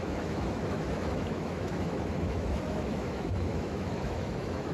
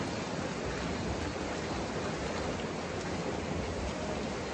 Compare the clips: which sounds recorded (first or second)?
second